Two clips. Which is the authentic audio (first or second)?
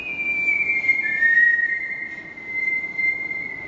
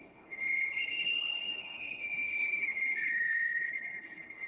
first